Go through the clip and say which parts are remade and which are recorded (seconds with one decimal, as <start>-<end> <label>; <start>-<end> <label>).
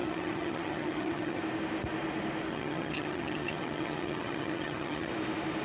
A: 0.0-1.4 remade; 1.4-2.5 recorded; 2.5-5.1 remade; 5.1-5.6 recorded